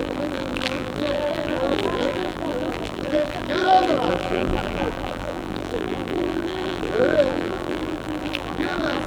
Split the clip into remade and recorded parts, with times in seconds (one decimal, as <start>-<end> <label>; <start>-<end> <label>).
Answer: 0.0-9.1 remade